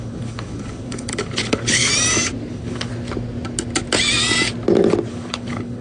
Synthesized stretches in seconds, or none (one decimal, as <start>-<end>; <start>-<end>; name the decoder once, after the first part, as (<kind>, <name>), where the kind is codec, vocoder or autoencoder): 0.0-1.9 (codec, HILCodec); 2.5-2.9; 5.1-5.8